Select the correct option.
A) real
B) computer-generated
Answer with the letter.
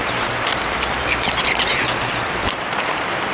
B